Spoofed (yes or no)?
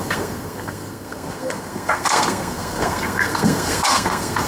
yes